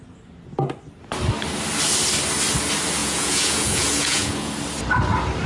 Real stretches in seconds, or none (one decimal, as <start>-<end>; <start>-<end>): 0.0-3.0; 4.5-5.5